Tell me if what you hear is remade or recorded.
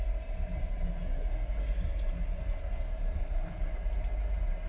recorded